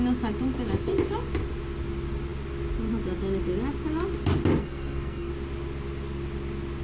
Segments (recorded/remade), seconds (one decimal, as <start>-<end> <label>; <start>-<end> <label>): 0.0-4.6 recorded; 4.6-5.3 remade; 5.3-6.8 recorded